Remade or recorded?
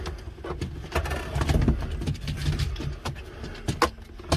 recorded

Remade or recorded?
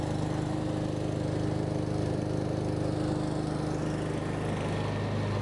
recorded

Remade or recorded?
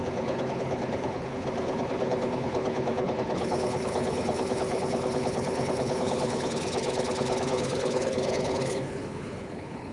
remade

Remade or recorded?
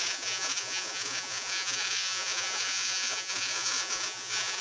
remade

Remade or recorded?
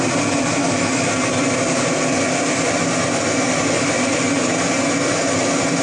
recorded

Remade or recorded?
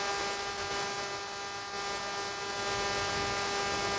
recorded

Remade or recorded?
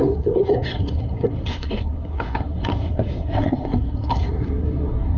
remade